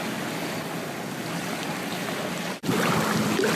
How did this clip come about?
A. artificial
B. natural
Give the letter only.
B